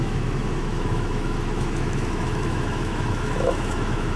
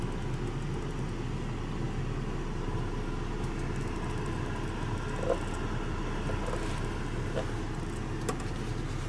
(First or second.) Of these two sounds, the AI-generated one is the first